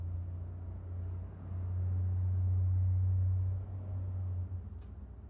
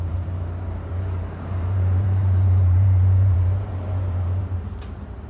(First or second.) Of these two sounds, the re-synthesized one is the second